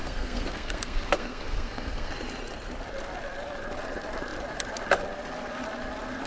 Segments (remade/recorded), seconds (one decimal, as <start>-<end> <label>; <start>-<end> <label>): 0.0-2.1 remade; 2.1-6.3 recorded